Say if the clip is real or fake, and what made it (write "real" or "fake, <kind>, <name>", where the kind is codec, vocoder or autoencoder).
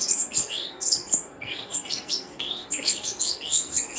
fake, codec, SNAC